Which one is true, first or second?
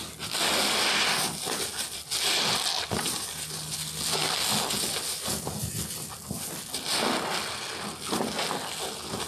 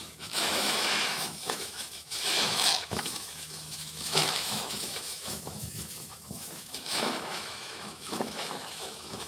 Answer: first